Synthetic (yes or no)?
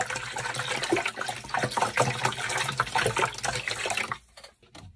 no